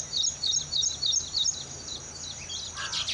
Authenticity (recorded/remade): recorded